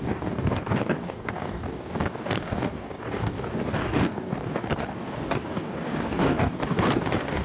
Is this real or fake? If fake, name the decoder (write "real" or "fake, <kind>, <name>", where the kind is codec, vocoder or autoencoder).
fake, codec, DAC